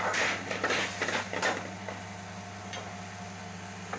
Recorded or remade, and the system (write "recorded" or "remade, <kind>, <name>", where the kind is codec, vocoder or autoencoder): recorded